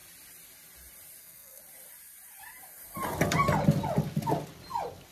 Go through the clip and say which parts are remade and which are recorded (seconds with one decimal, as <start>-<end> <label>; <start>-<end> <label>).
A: 0.0-1.2 recorded; 1.2-1.6 remade; 1.6-5.1 recorded